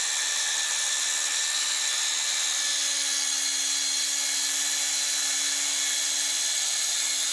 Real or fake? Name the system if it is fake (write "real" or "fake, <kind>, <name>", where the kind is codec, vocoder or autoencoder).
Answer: real